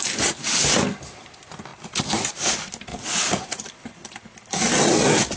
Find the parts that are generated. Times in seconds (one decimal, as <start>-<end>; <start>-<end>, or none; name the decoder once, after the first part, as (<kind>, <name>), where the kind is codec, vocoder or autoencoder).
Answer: 2.9-3.6 (vocoder, Vocos)